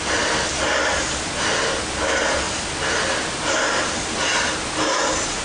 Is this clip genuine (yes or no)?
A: yes